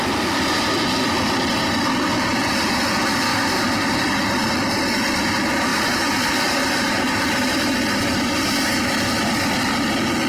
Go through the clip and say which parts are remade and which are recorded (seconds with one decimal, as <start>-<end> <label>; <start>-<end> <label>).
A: 0.0-3.3 recorded; 3.3-4.4 remade; 4.4-5.7 recorded; 5.7-8.4 remade; 8.4-10.3 recorded